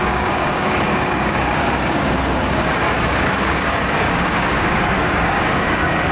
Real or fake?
fake